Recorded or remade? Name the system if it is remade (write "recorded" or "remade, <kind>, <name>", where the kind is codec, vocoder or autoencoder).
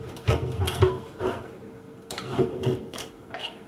remade, codec, SNAC